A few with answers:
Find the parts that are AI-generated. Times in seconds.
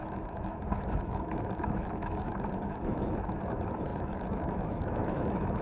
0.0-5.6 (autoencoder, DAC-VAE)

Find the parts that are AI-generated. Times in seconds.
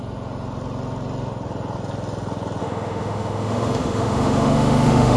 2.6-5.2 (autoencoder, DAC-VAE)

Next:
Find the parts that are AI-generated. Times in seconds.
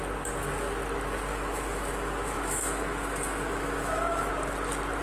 1.3-4.3 (autoencoder, DAC-VAE)